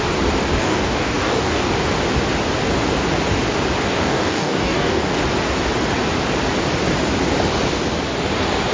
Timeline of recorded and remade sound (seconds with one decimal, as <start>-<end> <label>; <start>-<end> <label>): 0.0-0.6 recorded; 0.6-1.7 remade; 1.7-3.9 recorded; 3.9-5.2 remade; 5.2-8.7 recorded